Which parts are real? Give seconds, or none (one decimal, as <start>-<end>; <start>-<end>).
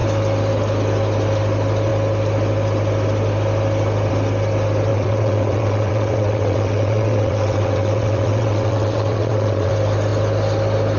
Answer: 0.0-4.9; 9.7-11.0